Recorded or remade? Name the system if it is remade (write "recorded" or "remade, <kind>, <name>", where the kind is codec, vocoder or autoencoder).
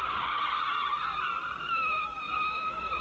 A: recorded